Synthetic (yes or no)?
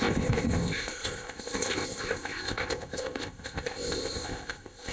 yes